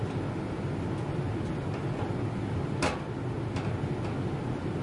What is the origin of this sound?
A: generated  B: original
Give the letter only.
B